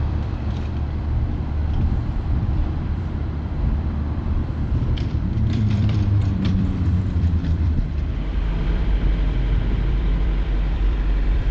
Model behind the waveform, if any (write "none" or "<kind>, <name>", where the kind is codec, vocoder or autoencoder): vocoder, BigVGAN v2